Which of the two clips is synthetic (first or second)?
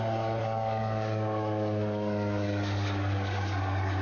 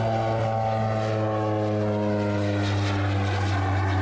first